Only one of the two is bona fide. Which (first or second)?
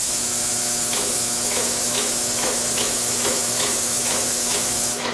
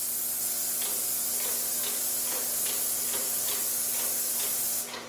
second